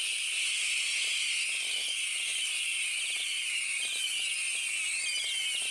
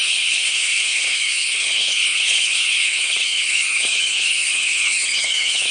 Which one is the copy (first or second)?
second